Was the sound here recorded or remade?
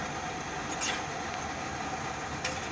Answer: recorded